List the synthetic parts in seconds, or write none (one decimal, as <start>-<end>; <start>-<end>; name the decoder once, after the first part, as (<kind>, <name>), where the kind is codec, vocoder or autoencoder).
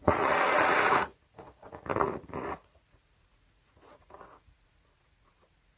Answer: 0.0-5.8 (vocoder, Vocos)